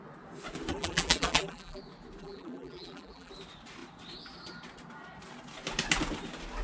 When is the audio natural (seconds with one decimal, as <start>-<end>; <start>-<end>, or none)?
0.0-0.7; 1.8-2.2; 3.3-6.6